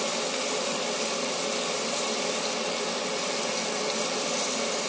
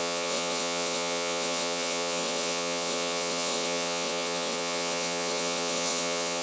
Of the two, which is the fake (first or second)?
second